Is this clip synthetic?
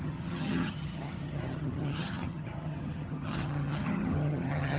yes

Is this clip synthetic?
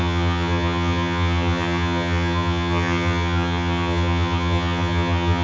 yes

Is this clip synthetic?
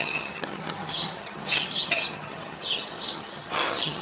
yes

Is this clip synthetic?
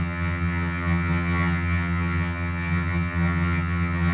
yes